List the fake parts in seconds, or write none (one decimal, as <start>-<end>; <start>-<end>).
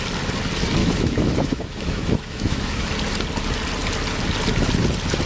0.8-2.9